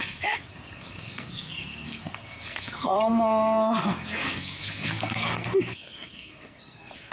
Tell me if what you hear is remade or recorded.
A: remade